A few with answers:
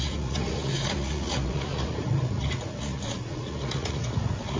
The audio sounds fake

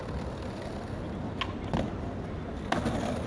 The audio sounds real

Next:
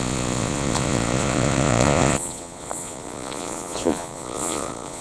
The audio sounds fake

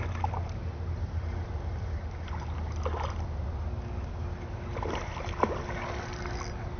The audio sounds real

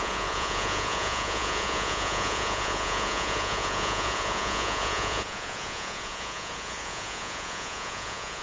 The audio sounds fake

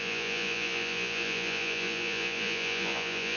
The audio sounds fake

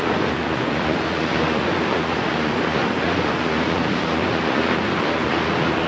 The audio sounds fake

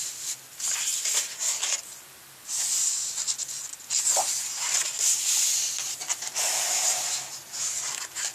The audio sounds real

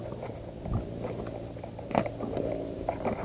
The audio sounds real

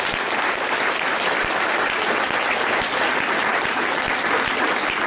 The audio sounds real